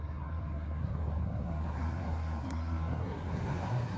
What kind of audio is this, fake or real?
fake